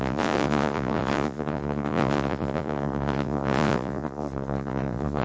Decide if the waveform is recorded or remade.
remade